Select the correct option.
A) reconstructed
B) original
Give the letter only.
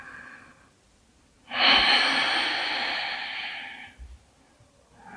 B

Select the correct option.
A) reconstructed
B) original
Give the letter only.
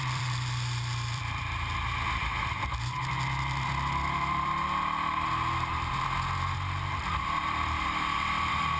A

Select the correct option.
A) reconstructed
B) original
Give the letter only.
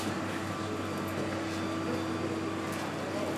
B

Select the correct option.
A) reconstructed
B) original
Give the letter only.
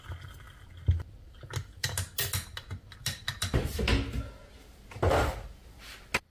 B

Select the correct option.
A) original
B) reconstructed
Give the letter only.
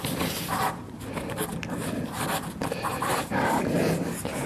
A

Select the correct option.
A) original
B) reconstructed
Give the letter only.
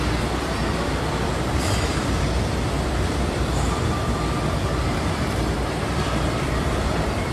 B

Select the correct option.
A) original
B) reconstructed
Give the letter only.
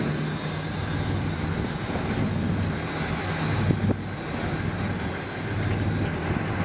A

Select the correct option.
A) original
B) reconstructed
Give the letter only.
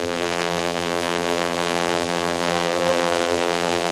B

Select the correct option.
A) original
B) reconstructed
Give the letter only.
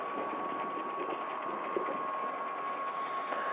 A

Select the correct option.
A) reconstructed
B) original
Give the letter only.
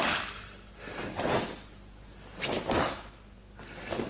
B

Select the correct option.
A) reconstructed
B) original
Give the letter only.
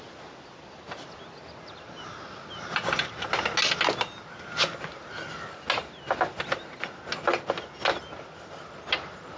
B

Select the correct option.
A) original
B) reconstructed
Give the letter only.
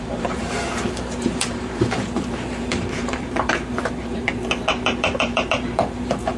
B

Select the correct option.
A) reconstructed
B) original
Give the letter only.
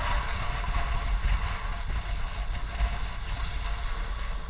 B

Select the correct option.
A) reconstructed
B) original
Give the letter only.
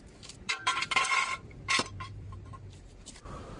A